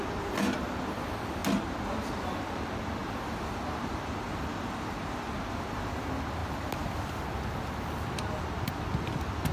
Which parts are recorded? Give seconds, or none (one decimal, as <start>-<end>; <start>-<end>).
0.0-9.5